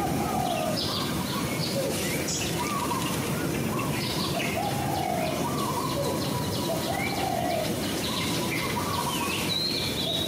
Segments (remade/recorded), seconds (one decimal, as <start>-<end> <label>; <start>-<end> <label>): 0.0-1.6 recorded; 1.6-6.8 remade; 6.8-7.7 recorded; 7.7-8.5 remade; 8.5-10.3 recorded